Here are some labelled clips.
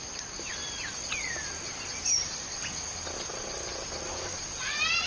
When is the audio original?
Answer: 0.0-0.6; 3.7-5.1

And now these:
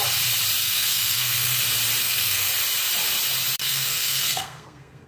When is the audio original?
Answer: 0.0-0.6; 1.6-2.0; 2.5-3.6